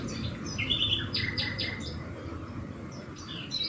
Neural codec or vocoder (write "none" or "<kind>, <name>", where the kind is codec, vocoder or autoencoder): vocoder, BigVGAN v2